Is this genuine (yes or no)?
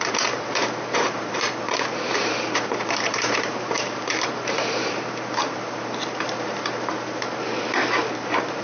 no